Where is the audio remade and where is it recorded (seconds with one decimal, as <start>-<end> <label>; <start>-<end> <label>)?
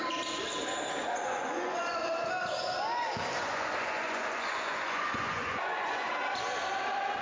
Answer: 0.0-1.0 recorded; 1.0-2.1 remade; 2.1-3.4 recorded; 3.4-6.1 remade; 6.1-7.2 recorded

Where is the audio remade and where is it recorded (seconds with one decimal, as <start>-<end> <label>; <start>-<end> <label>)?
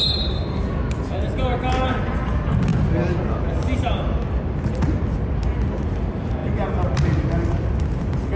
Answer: 0.0-8.4 recorded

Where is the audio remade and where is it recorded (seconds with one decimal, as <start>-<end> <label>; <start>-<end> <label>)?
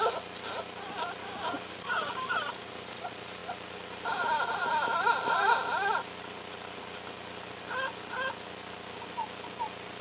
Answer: 0.0-1.2 recorded; 1.2-2.3 remade; 2.3-10.0 recorded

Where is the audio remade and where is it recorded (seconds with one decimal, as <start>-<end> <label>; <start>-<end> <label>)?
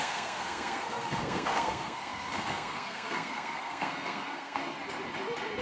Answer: 0.0-4.6 remade; 4.6-5.6 recorded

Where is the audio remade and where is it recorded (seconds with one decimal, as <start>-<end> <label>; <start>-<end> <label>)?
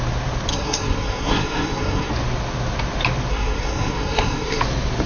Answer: 0.0-0.5 recorded; 0.5-2.1 remade; 2.1-3.3 recorded; 3.3-4.6 remade; 4.6-5.1 recorded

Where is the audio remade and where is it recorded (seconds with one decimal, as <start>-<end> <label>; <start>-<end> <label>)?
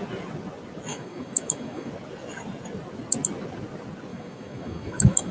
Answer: 0.0-0.9 recorded; 0.9-1.9 remade; 1.9-4.1 recorded; 4.1-5.3 remade